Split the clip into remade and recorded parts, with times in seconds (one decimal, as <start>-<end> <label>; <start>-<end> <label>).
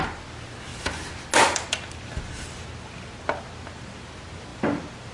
0.0-5.1 recorded